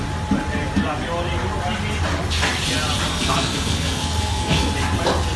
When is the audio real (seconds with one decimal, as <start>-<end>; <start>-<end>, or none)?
0.0-3.1; 4.7-5.4

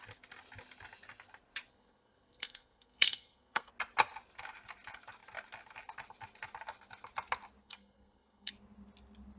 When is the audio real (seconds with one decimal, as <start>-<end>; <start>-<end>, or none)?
0.0-1.7; 3.7-7.6; 8.5-9.4

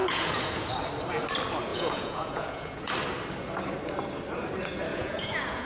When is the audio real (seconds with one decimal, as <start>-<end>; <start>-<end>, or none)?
0.7-1.7; 2.9-4.9

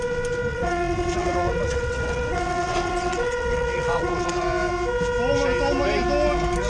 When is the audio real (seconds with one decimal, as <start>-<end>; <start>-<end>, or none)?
0.0-0.5; 4.3-6.7

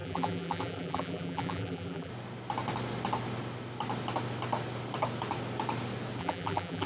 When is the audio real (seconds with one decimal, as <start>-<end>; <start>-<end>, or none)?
2.1-6.2